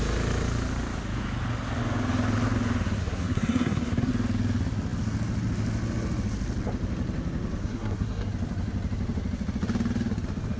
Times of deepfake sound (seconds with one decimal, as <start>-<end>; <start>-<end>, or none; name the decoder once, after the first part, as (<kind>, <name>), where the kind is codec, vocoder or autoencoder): 3.0-4.1 (codec, SNAC); 7.6-8.3